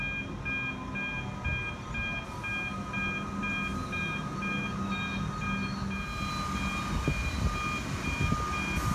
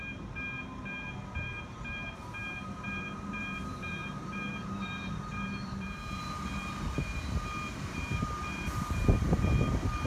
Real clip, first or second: first